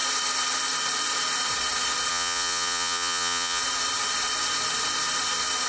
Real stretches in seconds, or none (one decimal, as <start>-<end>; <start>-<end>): 0.0-2.1; 3.6-5.7